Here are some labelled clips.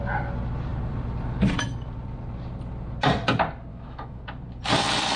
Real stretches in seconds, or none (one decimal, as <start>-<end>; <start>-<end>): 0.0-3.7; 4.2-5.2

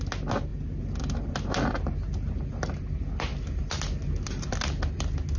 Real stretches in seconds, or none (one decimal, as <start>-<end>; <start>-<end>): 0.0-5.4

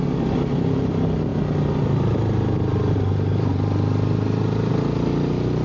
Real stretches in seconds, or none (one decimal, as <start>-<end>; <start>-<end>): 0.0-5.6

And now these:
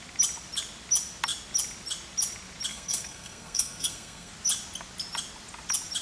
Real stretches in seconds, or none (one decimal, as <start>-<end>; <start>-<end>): 0.0-2.7; 4.3-6.0

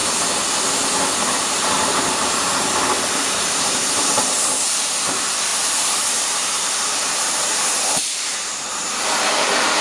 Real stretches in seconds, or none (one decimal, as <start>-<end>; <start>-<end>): 0.0-1.4

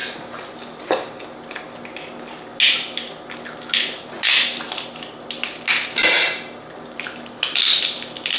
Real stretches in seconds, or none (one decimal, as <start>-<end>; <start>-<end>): 0.0-8.4

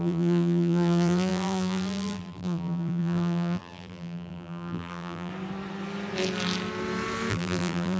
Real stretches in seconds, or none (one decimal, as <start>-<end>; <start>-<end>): 5.3-7.3